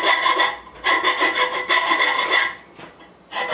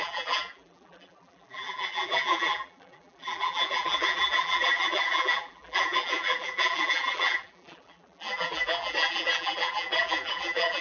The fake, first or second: second